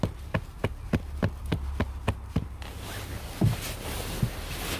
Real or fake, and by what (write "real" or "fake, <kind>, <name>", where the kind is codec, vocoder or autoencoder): real